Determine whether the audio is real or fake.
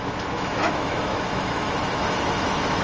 fake